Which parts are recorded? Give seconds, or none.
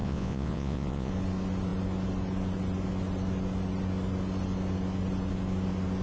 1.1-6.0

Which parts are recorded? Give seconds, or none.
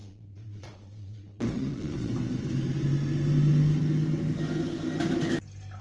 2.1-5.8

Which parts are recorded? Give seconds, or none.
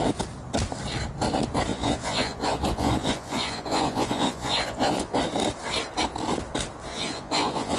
0.0-1.7; 5.2-6.9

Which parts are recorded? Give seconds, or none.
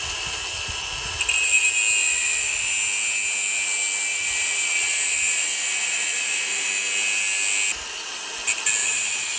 0.0-2.0; 2.7-4.1; 6.7-8.8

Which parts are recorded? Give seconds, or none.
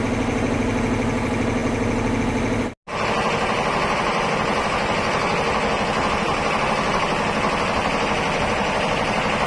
0.0-9.5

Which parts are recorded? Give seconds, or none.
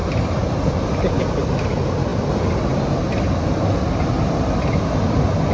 0.0-5.5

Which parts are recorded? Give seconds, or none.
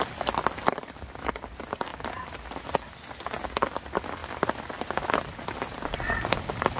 0.0-6.8